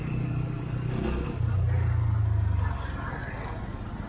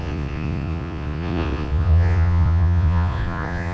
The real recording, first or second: first